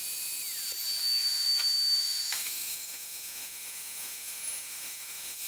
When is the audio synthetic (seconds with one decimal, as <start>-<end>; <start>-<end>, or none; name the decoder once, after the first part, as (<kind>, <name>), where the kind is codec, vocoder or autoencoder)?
1.0-5.5 (autoencoder, DAC-VAE)